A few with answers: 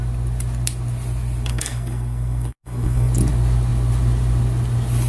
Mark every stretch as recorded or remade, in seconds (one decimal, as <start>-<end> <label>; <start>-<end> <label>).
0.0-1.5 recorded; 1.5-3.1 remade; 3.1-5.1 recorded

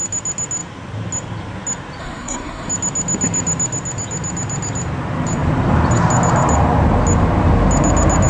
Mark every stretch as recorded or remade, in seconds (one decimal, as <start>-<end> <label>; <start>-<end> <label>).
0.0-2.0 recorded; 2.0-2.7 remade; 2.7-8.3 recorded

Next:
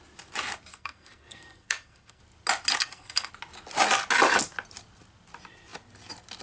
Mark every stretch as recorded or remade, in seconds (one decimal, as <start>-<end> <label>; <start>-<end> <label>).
0.0-0.7 recorded; 0.7-2.2 remade; 2.2-2.8 recorded; 2.8-3.3 remade; 3.3-6.4 recorded

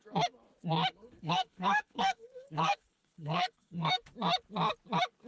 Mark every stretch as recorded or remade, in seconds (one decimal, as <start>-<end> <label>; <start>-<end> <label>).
0.0-0.9 recorded; 0.9-4.1 remade; 4.1-5.3 recorded

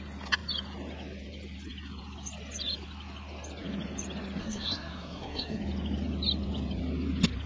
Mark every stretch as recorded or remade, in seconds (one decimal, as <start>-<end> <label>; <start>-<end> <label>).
0.0-4.4 recorded; 4.4-5.6 remade; 5.6-7.5 recorded

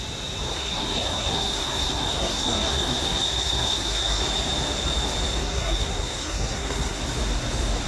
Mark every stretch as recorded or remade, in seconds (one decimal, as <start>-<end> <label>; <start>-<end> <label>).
0.0-0.5 recorded; 0.5-4.2 remade; 4.2-5.4 recorded; 5.4-7.0 remade; 7.0-7.9 recorded